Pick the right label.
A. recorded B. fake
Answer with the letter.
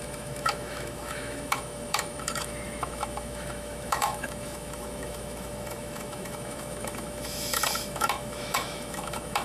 B